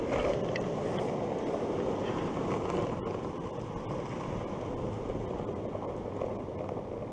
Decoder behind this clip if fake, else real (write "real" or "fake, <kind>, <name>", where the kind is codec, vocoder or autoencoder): real